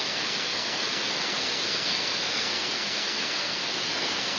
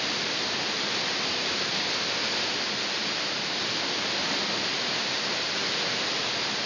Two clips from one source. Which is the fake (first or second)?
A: first